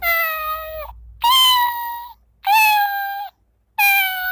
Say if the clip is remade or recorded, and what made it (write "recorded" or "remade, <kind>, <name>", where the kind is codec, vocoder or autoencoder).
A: recorded